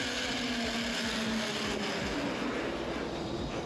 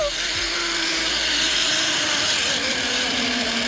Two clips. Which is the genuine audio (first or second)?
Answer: first